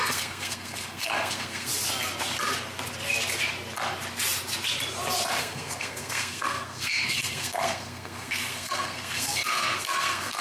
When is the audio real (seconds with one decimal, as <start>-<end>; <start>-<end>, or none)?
1.7-5.4